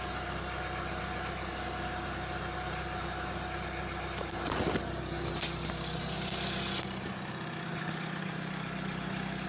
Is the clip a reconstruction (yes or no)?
no